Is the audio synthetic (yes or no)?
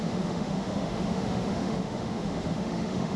yes